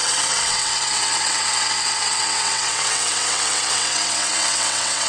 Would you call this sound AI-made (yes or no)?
yes